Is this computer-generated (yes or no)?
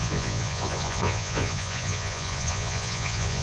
yes